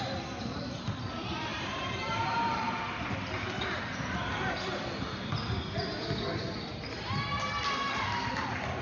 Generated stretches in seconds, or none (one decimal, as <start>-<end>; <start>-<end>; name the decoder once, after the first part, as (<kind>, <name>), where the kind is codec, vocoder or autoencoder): 1.5-3.0 (vocoder, BigVGAN v2)